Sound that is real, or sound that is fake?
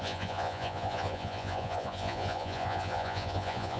fake